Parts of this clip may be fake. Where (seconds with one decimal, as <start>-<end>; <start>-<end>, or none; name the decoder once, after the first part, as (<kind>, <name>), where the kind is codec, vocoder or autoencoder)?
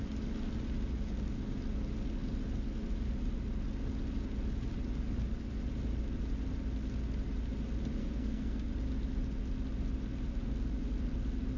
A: 8.0-8.7 (codec, SNAC)